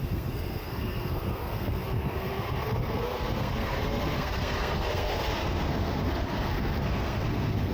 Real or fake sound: fake